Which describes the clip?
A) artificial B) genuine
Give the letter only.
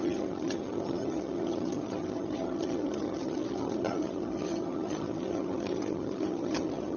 A